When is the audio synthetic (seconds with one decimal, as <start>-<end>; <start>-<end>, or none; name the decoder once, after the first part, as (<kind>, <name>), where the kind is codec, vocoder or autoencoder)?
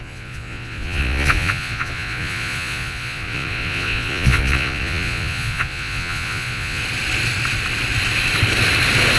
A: 0.0-6.8 (vocoder, Vocos)